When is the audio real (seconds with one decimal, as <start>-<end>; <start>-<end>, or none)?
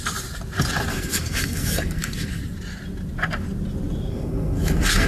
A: 0.0-0.9; 2.4-4.1